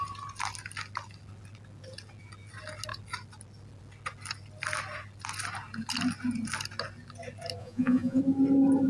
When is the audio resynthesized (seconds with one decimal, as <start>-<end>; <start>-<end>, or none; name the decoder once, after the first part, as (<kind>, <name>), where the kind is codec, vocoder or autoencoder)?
7.6-8.2 (vocoder, Vocos)